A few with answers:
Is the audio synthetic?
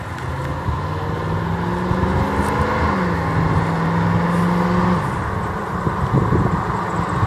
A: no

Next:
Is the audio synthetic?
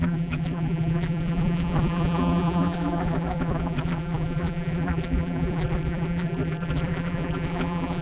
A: yes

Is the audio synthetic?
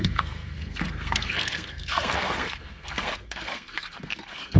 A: yes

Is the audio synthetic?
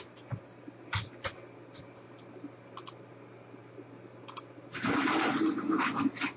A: no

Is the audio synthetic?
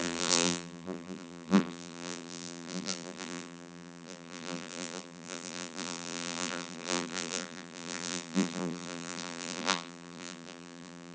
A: yes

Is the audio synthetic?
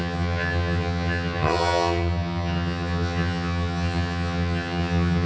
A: yes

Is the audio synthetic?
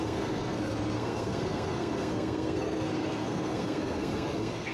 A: yes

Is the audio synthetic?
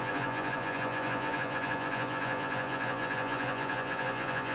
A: yes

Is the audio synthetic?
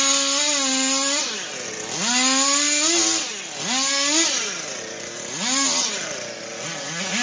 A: no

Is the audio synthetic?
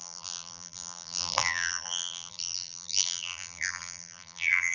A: yes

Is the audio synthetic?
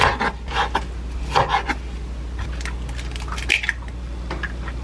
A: no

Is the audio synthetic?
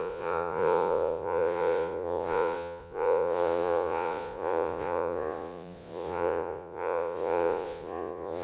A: yes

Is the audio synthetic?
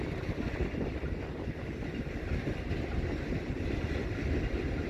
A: no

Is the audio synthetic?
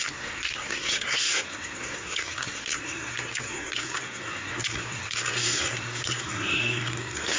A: yes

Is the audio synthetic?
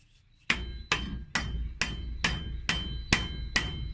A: no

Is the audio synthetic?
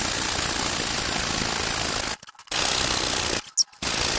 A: no